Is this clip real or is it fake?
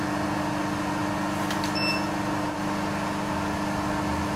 real